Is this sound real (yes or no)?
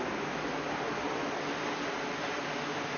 yes